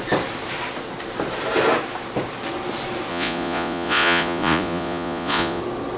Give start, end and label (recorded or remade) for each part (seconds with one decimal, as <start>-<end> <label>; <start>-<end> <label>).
0.0-3.1 recorded; 3.1-5.6 remade; 5.6-6.0 recorded